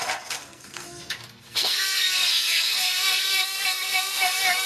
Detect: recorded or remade remade